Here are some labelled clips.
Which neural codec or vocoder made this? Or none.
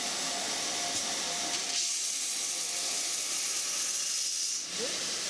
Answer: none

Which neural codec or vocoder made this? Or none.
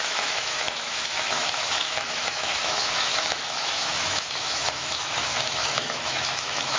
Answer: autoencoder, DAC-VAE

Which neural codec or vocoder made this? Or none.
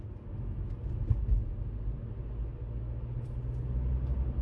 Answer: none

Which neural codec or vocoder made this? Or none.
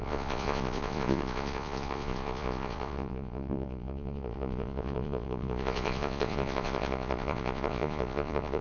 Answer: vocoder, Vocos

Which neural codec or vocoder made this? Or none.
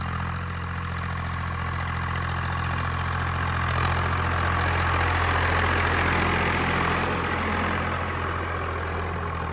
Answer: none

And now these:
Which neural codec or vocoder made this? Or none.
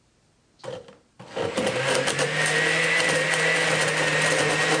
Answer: none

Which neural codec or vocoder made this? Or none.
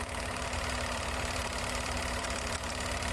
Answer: vocoder, BigVGAN v2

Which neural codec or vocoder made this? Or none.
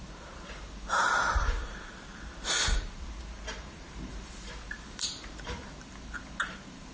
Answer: vocoder, BigVGAN v2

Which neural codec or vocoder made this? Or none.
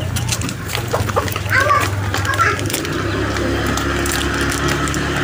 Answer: none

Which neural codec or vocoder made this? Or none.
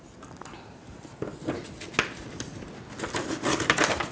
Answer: none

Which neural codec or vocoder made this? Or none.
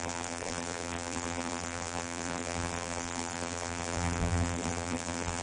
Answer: vocoder, BigVGAN v2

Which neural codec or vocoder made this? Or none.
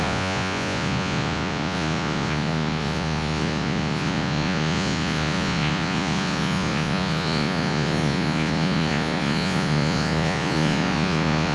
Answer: vocoder, Vocos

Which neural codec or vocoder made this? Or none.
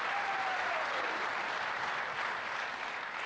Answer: none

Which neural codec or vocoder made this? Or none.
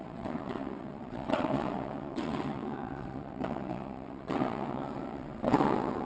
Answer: vocoder, WaveNeXt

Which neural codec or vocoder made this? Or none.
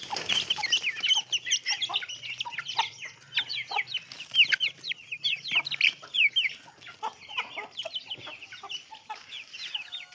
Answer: none